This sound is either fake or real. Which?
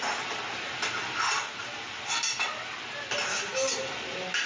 real